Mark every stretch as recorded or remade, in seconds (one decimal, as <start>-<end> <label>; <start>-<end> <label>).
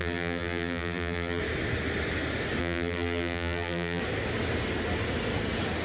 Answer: 0.0-1.4 remade; 1.4-2.6 recorded; 2.6-4.0 remade; 4.0-5.8 recorded